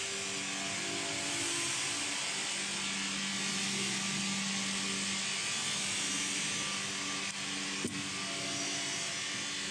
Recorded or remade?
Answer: recorded